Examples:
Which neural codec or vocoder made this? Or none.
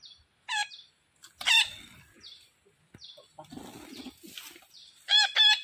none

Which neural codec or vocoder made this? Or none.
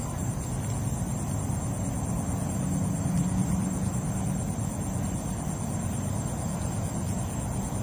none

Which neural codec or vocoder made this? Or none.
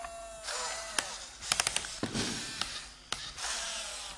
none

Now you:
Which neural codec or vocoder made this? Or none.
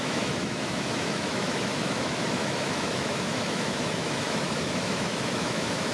autoencoder, DAC-VAE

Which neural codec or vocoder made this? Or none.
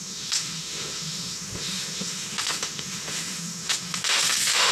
autoencoder, DAC-VAE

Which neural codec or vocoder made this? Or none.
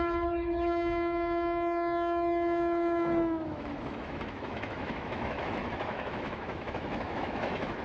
autoencoder, DAC-VAE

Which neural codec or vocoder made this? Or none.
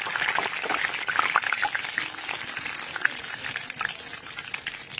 none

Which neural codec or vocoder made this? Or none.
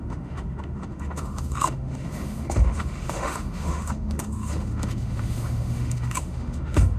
autoencoder, DAC-VAE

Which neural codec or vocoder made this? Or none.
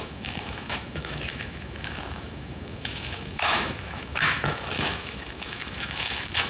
autoencoder, DAC-VAE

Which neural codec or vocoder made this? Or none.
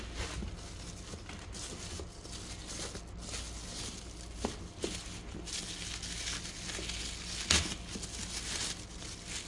none